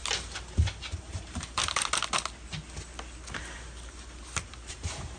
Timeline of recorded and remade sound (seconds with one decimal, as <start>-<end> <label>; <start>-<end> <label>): 0.0-0.5 recorded; 0.5-1.6 remade; 1.6-4.7 recorded; 4.7-5.2 remade